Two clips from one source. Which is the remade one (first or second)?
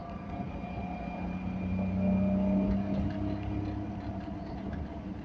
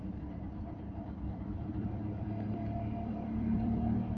second